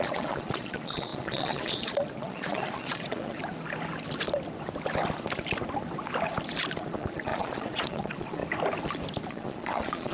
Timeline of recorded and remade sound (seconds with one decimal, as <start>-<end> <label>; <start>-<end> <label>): 0.0-3.4 remade; 3.4-6.8 recorded; 6.8-8.4 remade; 8.4-9.3 recorded; 9.3-10.1 remade